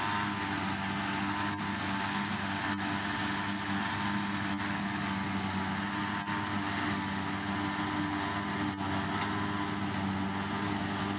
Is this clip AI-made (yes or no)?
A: no